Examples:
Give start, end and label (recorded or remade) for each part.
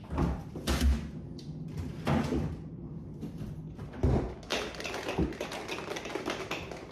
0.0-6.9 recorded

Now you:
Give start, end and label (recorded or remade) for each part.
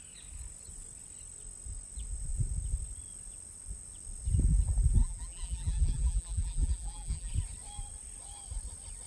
0.0-5.0 recorded; 5.0-7.3 remade; 7.3-9.1 recorded